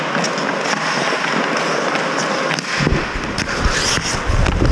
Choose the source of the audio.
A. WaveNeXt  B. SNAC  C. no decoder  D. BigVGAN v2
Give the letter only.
C